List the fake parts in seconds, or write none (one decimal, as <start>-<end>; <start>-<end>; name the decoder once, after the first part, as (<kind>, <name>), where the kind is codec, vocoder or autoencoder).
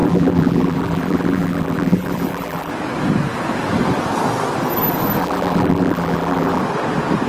0.0-2.7 (vocoder, BigVGAN v2); 5.2-6.6